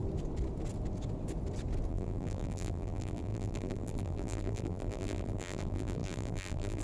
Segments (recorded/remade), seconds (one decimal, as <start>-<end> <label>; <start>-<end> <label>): 0.0-1.9 recorded; 1.9-6.8 remade